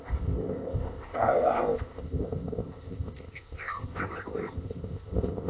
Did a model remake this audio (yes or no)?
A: yes